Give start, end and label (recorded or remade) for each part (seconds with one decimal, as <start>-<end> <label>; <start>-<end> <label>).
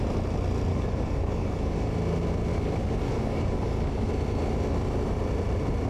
0.0-0.7 recorded; 0.7-1.9 remade; 1.9-2.5 recorded; 2.5-4.1 remade; 4.1-5.9 recorded